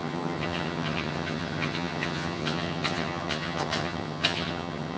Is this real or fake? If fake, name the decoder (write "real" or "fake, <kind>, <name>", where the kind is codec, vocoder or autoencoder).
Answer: fake, vocoder, HiFi-GAN